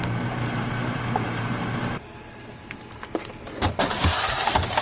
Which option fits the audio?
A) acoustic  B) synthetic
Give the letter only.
B